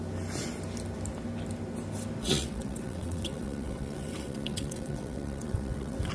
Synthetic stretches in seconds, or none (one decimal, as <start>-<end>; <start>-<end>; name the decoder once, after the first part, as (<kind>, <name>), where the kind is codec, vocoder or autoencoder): 2.2-6.1 (vocoder, WaveNeXt)